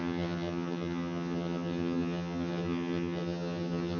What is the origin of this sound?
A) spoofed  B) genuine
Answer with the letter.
A